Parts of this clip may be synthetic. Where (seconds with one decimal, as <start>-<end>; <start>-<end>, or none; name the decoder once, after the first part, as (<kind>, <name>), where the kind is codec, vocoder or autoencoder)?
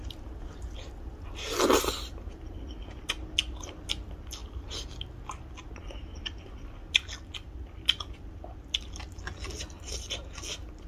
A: none